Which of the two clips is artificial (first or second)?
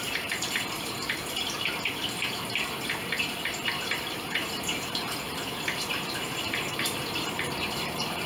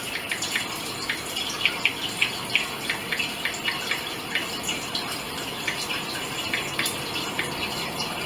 first